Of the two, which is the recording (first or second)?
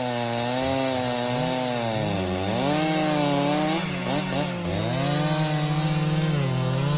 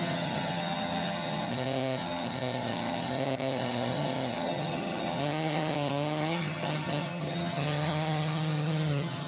first